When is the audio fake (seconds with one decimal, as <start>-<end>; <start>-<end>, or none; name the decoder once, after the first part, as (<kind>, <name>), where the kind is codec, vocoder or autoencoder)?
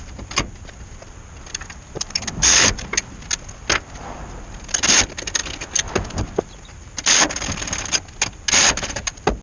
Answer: none